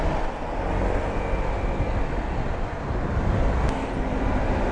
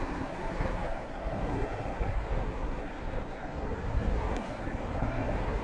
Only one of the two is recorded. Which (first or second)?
first